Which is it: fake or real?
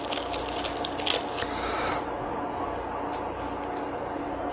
real